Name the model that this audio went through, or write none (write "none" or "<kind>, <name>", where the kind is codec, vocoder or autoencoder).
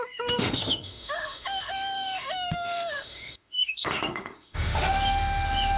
autoencoder, DAC-VAE